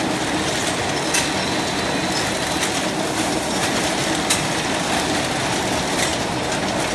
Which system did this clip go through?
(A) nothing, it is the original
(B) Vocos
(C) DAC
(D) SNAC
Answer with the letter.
A